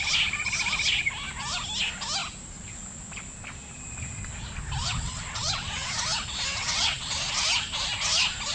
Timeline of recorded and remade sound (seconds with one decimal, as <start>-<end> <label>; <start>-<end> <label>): 0.0-4.8 recorded; 4.8-5.9 remade; 5.9-6.5 recorded; 6.5-7.2 remade; 7.2-8.5 recorded